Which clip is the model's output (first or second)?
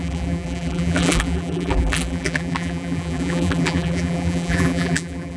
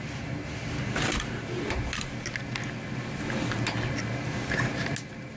first